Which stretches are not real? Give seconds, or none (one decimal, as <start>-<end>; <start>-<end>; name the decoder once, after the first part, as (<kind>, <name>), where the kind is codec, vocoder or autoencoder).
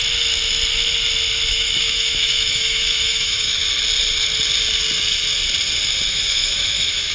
1.5-3.6 (autoencoder, DAC-VAE); 6.1-7.1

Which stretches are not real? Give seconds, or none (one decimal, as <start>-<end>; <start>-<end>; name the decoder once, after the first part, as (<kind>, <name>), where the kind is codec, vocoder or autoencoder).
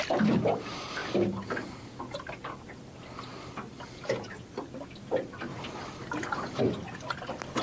none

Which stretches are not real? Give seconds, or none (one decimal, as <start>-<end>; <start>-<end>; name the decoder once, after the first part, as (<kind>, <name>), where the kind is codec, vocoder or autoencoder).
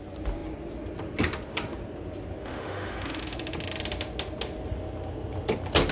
2.4-3.2 (autoencoder, DAC-VAE)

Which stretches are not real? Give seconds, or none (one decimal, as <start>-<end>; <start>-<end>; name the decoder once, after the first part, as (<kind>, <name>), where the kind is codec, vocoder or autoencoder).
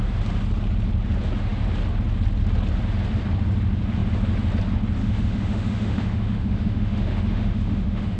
5.0-8.2 (autoencoder, DAC-VAE)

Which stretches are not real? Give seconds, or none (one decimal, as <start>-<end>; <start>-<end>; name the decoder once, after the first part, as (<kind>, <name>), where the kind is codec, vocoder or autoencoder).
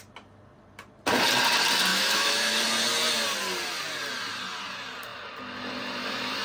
1.9-2.6 (autoencoder, DAC-VAE)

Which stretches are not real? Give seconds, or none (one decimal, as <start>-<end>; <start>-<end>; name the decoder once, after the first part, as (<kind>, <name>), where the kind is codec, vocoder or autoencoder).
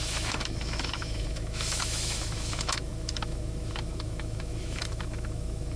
0.0-5.8 (autoencoder, DAC-VAE)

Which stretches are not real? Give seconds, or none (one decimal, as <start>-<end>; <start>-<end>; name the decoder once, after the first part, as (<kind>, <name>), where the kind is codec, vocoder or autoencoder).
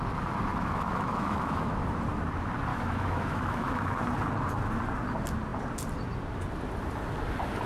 0.5-1.7 (autoencoder, DAC-VAE); 2.7-4.0